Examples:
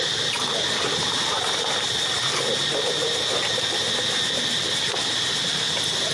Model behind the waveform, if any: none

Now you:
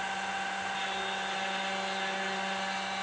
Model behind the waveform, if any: none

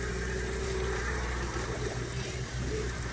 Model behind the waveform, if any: vocoder, BigVGAN v2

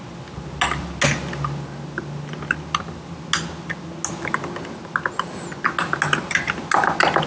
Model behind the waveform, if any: none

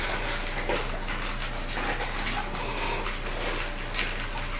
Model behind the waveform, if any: none